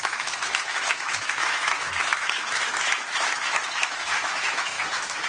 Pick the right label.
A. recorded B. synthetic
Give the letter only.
B